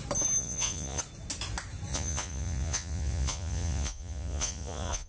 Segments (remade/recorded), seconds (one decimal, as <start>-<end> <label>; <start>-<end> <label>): 0.0-0.4 recorded; 0.4-1.0 remade; 1.0-1.9 recorded; 1.9-5.1 remade